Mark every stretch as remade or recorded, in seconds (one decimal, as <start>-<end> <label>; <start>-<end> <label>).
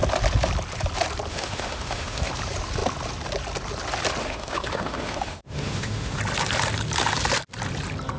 0.0-1.3 recorded; 1.3-2.3 remade; 2.3-4.2 recorded; 4.2-6.2 remade; 6.2-8.2 recorded